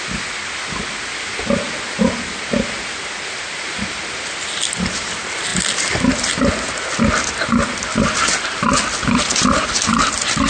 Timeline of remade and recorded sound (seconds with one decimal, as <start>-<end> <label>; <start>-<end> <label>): 0.0-10.5 recorded